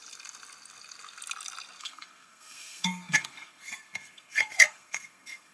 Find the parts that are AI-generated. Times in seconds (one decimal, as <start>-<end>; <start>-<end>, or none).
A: 1.8-5.5